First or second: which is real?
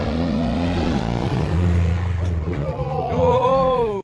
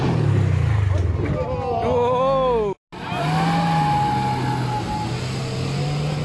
second